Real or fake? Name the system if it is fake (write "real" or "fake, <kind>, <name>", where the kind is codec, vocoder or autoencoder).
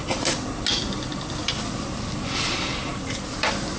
real